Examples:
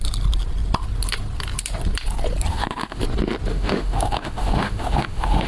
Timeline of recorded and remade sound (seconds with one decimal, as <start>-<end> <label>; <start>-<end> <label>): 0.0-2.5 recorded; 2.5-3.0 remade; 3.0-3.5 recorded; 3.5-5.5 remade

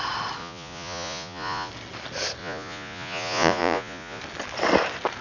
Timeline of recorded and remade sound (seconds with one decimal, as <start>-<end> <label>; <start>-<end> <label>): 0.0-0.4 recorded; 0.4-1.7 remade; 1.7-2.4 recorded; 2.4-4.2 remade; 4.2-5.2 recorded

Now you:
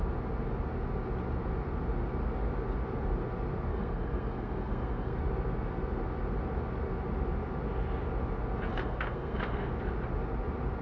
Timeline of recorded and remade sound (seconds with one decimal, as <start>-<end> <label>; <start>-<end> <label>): 0.0-3.7 recorded; 3.7-5.2 remade; 5.2-8.7 recorded; 8.7-9.7 remade; 9.7-10.8 recorded

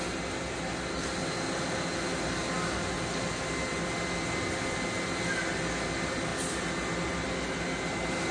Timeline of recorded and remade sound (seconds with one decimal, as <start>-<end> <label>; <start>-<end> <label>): 0.0-8.3 recorded

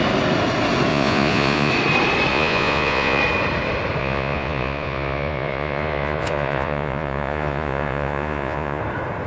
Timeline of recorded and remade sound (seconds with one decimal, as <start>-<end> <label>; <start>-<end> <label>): 0.0-0.9 recorded; 0.9-1.7 remade; 1.7-2.3 recorded; 2.3-3.2 remade; 3.2-4.0 recorded; 4.0-8.8 remade; 8.8-9.3 recorded

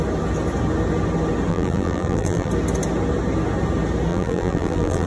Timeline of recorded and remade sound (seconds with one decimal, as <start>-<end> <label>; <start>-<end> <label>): 0.0-1.5 recorded; 1.5-2.5 remade; 2.5-4.1 recorded; 4.1-5.1 remade

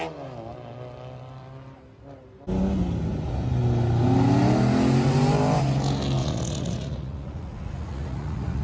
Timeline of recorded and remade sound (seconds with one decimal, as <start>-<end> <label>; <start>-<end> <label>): 0.0-6.2 recorded; 6.2-8.6 remade